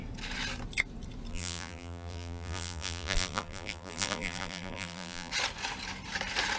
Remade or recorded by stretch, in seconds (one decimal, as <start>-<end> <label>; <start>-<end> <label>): 0.0-1.3 recorded; 1.3-5.3 remade; 5.3-6.6 recorded